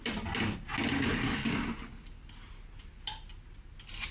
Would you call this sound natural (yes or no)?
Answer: yes